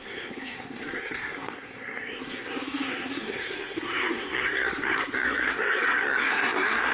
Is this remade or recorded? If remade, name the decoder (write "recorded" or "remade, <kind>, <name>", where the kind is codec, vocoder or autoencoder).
remade, codec, SNAC